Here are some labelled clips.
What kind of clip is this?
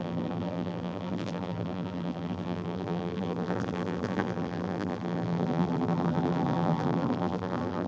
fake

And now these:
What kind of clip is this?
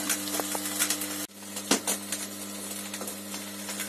real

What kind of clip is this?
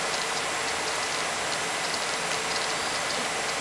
real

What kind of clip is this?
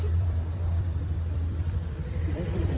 fake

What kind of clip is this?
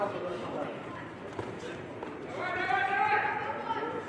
fake